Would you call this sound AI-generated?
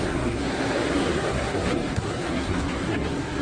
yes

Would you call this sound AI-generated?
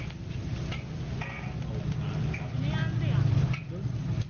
no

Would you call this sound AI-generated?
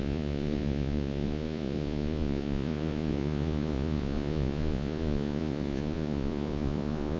yes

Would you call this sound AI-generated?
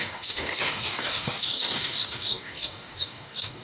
yes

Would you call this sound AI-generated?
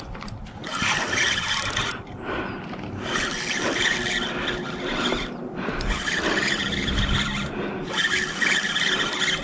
yes